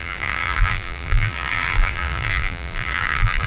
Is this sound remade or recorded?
remade